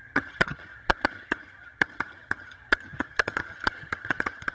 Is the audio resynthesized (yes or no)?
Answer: yes